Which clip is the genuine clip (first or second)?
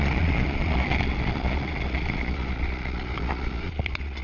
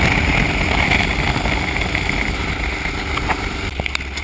second